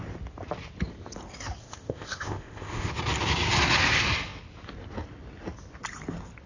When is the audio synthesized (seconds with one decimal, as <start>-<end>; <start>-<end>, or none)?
1.6-2.9